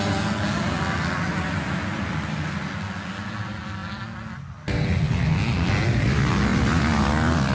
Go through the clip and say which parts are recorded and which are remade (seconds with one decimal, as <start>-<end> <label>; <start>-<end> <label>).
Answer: 0.0-7.5 recorded